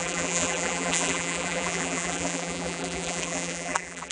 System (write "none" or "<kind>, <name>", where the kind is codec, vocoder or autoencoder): vocoder, BigVGAN v2